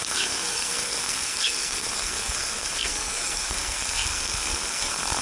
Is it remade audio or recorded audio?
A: remade